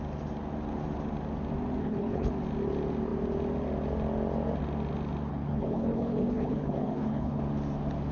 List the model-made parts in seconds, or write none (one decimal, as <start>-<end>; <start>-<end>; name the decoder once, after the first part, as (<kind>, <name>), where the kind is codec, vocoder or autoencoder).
1.8-2.3 (codec, HILCodec); 5.3-7.4